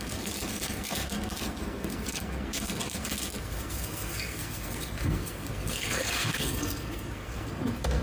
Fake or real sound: fake